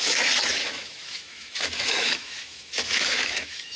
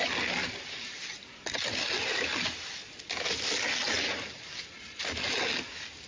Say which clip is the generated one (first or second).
first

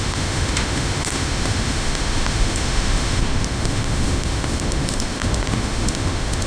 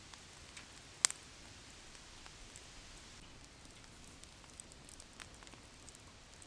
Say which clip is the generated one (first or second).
first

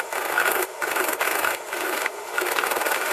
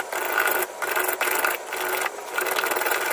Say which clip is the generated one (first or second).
first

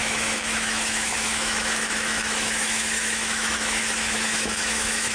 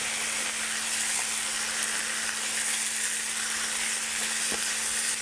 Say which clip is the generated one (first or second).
first